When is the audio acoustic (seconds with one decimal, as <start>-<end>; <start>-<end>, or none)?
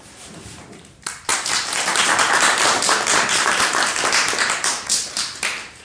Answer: none